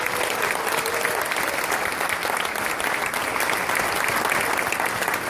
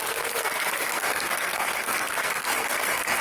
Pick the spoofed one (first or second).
second